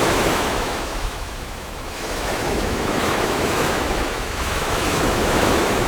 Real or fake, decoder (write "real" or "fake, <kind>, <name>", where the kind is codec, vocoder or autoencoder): fake, autoencoder, DAC-VAE